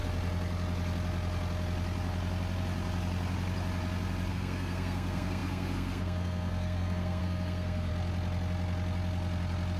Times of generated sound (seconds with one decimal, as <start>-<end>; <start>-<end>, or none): 4.3-7.9